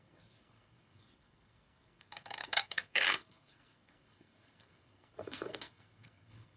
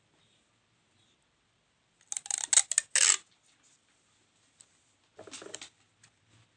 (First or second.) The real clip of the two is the second